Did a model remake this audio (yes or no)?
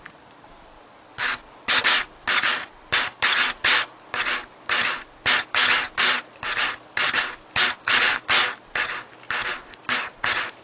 no